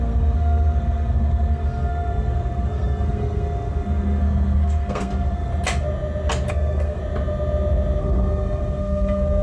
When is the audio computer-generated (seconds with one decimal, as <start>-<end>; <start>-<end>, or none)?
0.0-5.5; 6.5-7.0; 8.0-9.4